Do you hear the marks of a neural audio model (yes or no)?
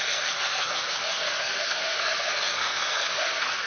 yes